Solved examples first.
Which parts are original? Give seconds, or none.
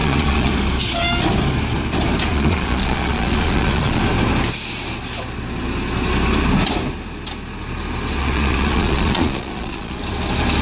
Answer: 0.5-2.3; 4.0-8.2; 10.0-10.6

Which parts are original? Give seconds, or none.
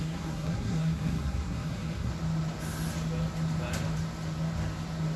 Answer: 2.1-5.2